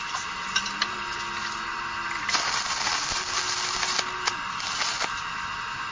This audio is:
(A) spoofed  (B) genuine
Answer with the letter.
B